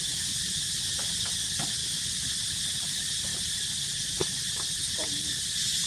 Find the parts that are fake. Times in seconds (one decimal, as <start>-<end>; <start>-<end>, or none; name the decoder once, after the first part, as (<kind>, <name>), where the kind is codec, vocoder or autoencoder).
none